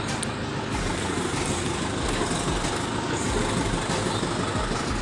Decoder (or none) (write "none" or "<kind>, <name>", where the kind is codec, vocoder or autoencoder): none